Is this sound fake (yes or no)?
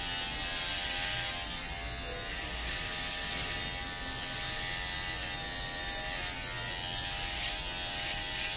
no